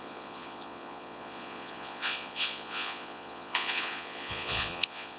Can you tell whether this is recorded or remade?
remade